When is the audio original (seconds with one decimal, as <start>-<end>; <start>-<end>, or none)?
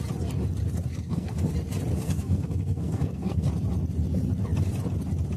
0.0-0.9; 1.5-1.9; 3.5-5.4